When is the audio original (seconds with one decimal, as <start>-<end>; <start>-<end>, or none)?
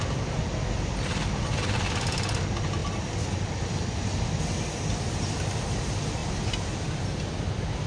0.0-7.9